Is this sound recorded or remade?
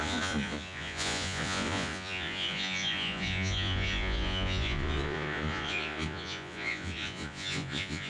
remade